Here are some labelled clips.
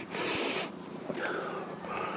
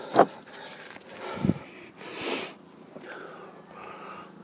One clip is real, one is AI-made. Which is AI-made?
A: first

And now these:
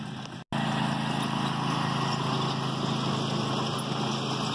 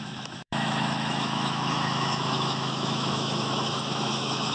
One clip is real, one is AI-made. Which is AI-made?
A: second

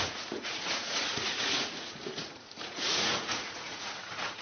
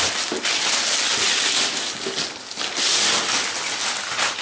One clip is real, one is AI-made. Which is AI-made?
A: first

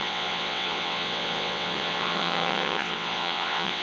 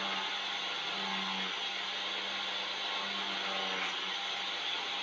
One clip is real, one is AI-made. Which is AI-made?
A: first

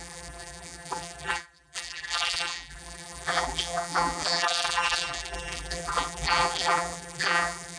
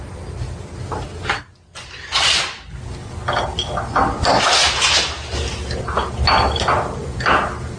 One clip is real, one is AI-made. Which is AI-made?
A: first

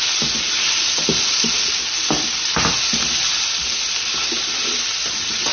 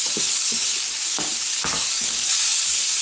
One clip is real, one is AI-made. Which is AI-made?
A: second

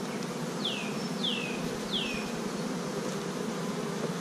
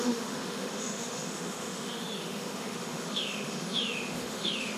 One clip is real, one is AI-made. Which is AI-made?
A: second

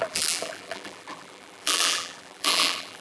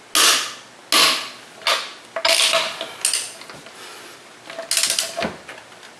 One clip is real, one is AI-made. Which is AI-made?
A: first